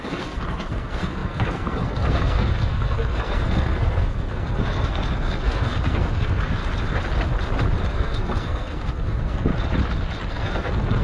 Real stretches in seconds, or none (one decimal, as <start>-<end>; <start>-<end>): 6.6-7.9; 9.5-10.3